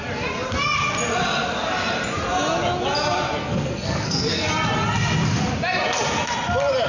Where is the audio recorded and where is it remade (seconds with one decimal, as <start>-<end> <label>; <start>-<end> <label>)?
0.0-3.4 recorded; 3.4-4.5 remade; 4.5-6.9 recorded